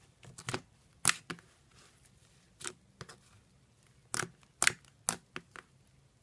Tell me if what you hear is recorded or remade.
recorded